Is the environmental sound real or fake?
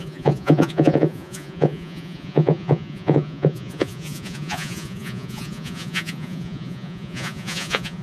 fake